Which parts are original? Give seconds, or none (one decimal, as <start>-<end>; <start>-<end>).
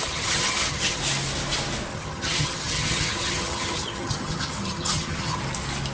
1.0-1.9; 5.4-5.9